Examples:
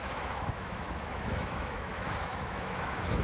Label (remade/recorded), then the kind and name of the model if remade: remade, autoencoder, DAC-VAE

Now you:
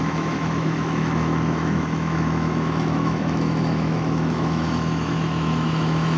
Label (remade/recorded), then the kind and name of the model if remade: remade, autoencoder, DAC-VAE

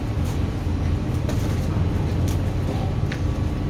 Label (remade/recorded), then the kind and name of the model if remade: recorded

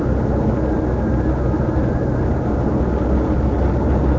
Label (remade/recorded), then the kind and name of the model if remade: recorded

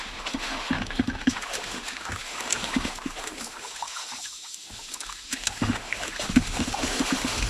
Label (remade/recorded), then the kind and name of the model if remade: remade, autoencoder, DAC-VAE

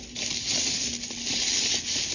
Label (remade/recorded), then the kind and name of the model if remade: recorded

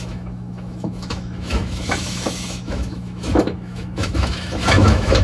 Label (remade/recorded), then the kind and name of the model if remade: remade, autoencoder, DAC-VAE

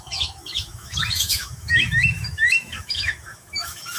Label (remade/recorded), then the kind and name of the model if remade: remade, autoencoder, DAC-VAE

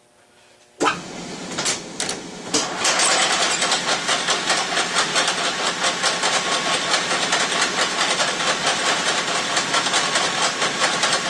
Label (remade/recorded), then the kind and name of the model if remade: recorded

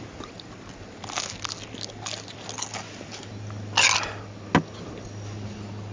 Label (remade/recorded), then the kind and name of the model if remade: recorded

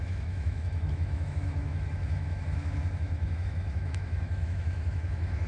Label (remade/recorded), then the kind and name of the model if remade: remade, autoencoder, DAC-VAE